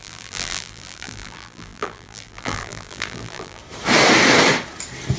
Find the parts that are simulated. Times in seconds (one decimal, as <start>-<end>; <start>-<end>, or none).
0.0-3.6